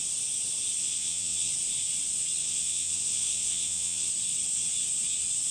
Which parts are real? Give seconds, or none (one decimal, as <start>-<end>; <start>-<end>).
0.0-0.8; 1.5-2.4; 4.1-5.5